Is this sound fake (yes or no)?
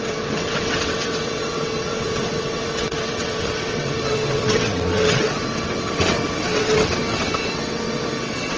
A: yes